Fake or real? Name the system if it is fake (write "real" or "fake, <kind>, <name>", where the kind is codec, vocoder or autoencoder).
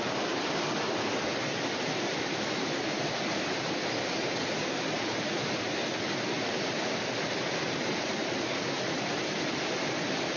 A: real